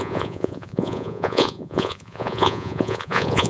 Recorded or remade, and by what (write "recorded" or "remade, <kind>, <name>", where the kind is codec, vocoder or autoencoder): remade, vocoder, Vocos